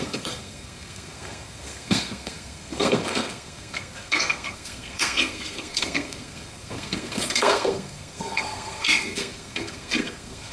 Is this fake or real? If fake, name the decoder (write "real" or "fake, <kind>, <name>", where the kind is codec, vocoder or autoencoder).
fake, codec, SNAC